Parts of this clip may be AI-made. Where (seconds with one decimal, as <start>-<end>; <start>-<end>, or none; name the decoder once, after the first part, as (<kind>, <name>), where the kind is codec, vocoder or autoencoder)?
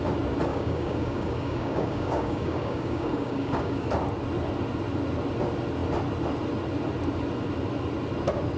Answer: 0.5-3.9 (codec, DAC)